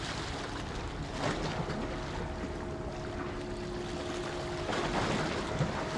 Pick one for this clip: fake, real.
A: real